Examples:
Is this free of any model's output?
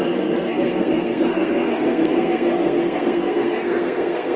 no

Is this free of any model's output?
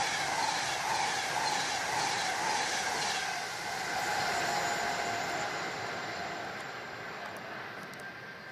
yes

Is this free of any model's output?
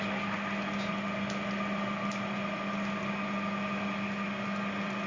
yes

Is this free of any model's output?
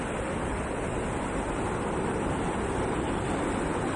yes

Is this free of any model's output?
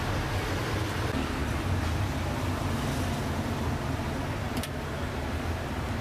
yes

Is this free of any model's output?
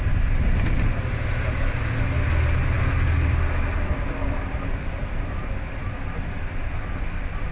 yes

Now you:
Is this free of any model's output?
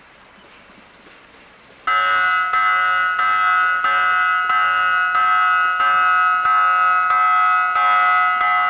yes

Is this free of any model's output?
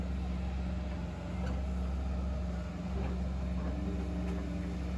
yes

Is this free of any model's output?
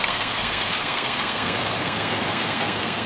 no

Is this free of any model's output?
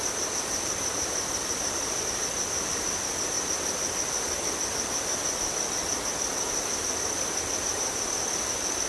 yes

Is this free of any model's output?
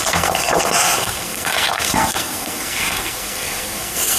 no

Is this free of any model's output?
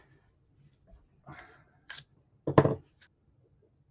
yes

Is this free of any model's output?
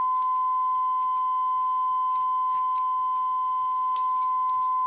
yes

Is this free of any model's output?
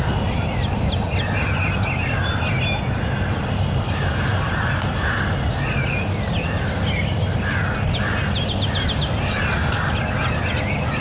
yes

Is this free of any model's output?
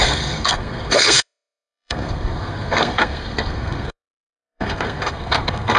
no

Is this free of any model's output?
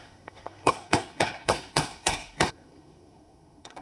no